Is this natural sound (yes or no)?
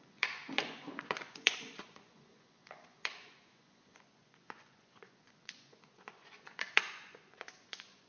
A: no